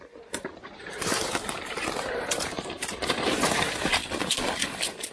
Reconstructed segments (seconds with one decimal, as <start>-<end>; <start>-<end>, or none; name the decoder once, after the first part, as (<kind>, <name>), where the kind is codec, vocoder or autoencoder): 0.0-4.0 (vocoder, BigVGAN v2)